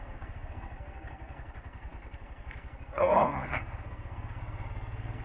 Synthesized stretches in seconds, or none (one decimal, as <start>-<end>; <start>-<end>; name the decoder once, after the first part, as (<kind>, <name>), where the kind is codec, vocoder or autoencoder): 0.0-5.2 (codec, SNAC)